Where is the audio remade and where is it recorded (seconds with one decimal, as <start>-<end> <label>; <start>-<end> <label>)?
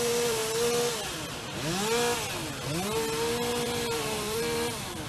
0.0-0.4 remade; 0.4-3.5 recorded; 3.5-5.1 remade